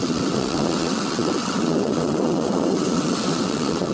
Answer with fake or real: fake